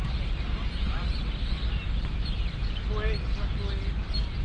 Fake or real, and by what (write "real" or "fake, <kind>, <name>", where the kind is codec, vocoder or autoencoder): real